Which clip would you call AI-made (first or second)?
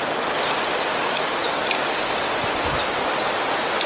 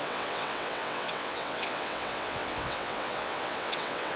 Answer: second